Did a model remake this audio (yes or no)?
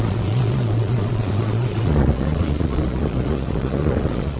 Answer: yes